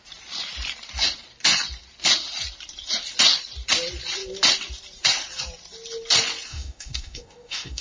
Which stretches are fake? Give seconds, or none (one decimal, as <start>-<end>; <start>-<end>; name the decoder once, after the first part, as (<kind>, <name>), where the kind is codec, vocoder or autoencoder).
6.5-7.8 (autoencoder, DAC-VAE)